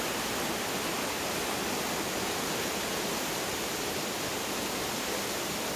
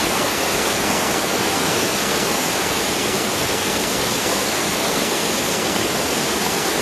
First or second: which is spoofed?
second